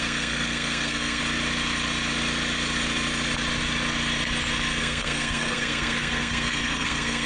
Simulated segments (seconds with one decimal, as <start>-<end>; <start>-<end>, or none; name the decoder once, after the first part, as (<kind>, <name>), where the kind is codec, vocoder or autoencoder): 0.0-1.2 (codec, SNAC); 4.8-7.3